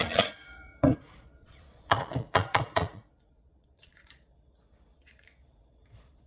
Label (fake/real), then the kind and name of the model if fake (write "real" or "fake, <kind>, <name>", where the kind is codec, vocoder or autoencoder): fake, vocoder, Vocos